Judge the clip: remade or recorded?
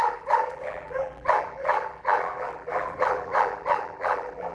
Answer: remade